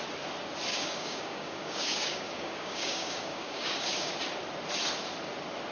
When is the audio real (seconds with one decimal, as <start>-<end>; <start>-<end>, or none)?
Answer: 0.0-0.7; 4.1-5.7